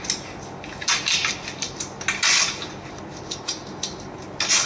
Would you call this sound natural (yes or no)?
yes